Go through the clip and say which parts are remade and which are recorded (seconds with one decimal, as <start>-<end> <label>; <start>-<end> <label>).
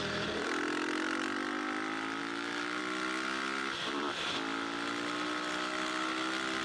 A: 0.0-2.2 recorded; 2.2-2.8 remade; 2.8-6.6 recorded